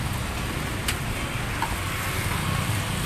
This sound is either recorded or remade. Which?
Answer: recorded